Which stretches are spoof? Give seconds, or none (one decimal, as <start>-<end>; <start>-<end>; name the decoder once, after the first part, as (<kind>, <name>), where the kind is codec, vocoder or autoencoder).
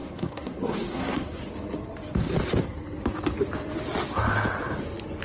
0.0-1.4 (codec, SNAC)